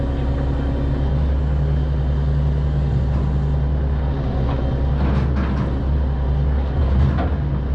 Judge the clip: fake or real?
real